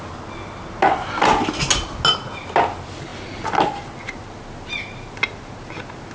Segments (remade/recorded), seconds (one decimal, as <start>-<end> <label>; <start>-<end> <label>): 0.0-6.1 recorded